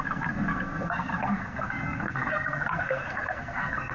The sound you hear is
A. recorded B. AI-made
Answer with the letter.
B